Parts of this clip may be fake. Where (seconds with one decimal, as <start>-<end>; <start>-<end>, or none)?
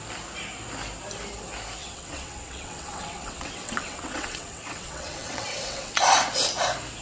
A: 1.8-6.0